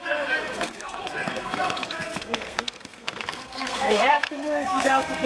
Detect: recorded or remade remade